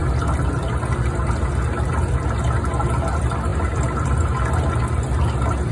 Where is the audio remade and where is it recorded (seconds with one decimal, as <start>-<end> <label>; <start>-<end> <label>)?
0.0-5.7 recorded